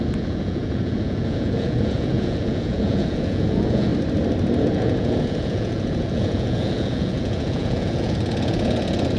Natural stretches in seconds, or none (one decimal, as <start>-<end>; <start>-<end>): 3.9-4.6